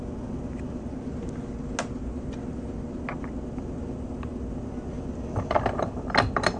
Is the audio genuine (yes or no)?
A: yes